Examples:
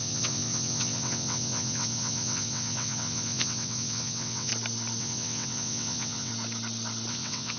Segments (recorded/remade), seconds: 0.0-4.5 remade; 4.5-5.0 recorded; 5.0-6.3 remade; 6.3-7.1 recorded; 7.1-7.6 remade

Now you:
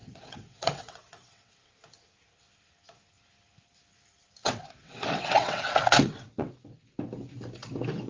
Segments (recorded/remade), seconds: 0.0-1.7 remade; 1.7-4.4 recorded; 4.4-6.8 remade; 6.8-8.1 recorded

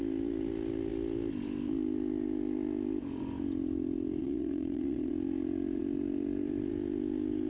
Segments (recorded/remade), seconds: 0.0-4.2 recorded; 4.2-5.1 remade; 5.1-7.5 recorded